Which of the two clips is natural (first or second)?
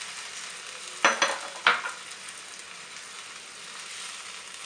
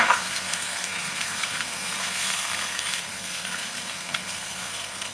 first